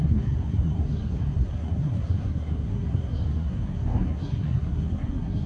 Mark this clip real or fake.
fake